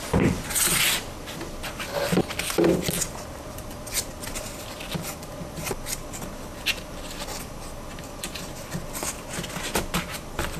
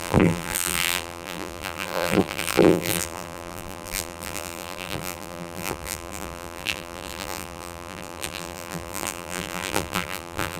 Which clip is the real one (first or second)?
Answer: first